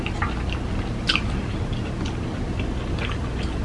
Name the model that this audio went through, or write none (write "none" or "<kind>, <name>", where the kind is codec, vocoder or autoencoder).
none